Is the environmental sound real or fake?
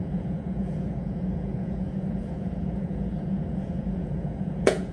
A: fake